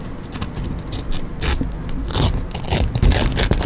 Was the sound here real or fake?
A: real